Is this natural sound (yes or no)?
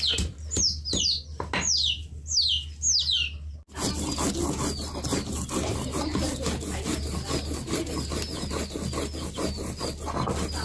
yes